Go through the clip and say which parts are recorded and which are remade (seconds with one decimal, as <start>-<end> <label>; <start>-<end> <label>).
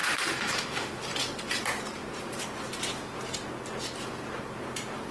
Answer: 0.0-1.0 remade; 1.0-5.1 recorded